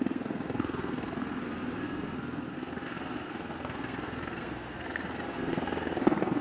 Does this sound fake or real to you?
fake